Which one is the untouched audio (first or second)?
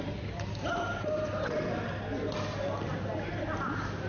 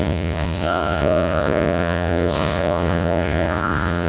first